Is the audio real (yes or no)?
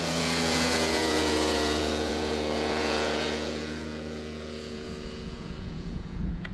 no